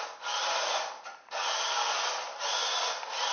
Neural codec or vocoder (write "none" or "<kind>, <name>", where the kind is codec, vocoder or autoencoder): none